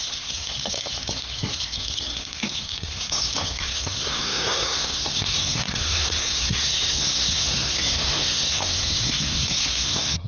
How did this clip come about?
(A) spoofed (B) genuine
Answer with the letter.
A